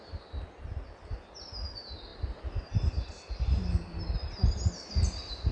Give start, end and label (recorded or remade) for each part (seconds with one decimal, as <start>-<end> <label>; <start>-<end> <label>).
0.0-5.5 recorded